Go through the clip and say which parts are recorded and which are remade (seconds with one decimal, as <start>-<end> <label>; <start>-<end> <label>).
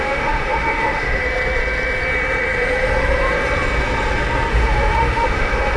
0.0-1.2 remade; 1.2-4.5 recorded; 4.5-5.8 remade